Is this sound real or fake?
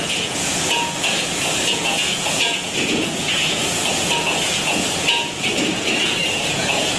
fake